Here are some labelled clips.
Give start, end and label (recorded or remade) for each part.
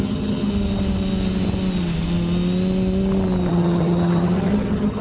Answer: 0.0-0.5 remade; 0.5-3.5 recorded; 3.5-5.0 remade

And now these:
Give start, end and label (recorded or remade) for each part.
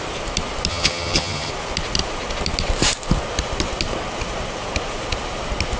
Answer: 0.0-0.7 recorded; 0.7-1.5 remade; 1.5-5.8 recorded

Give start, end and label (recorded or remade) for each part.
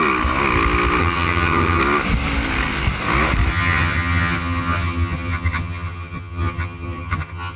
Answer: 0.0-1.0 recorded; 1.0-1.8 remade; 1.8-3.5 recorded; 3.5-7.6 remade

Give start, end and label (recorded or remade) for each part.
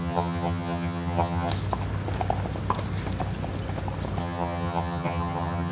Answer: 0.0-1.5 remade; 1.5-4.2 recorded; 4.2-5.7 remade